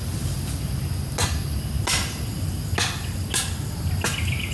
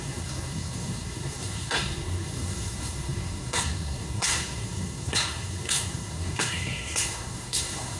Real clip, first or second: first